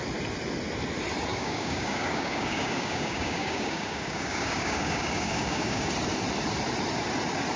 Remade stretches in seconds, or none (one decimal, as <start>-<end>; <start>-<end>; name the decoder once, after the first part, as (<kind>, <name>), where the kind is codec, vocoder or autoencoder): 1.3-5.9 (codec, DAC)

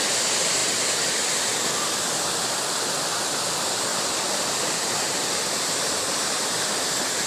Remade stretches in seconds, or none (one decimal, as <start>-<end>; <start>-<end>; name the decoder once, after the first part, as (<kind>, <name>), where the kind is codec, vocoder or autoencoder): 0.0-0.6 (vocoder, BigVGAN v2); 3.2-7.3